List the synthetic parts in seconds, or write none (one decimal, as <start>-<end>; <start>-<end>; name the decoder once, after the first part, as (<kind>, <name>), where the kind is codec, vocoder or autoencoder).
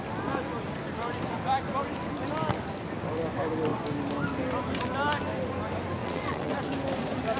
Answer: 6.0-6.7 (vocoder, WaveNeXt)